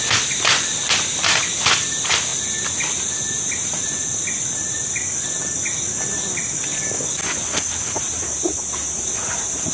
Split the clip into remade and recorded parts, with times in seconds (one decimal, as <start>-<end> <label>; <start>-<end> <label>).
0.0-9.7 recorded

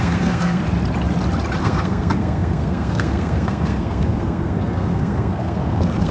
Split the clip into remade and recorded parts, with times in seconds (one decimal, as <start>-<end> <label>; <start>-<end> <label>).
0.0-0.6 remade; 0.6-1.6 recorded; 1.6-6.1 remade